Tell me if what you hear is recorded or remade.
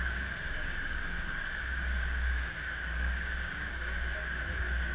remade